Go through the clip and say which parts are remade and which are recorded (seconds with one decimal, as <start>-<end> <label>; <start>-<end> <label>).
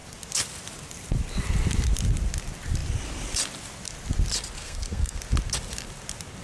0.0-4.6 recorded; 4.6-5.2 remade; 5.2-6.4 recorded